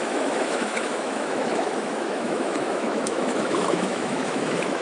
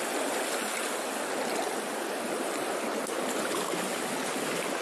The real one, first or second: second